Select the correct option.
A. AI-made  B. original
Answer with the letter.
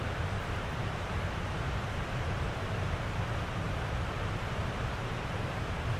A